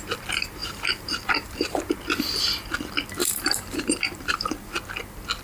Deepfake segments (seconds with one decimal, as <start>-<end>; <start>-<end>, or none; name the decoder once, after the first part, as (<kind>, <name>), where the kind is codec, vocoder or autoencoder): 0.6-1.9 (vocoder, BigVGAN v2); 3.2-4.7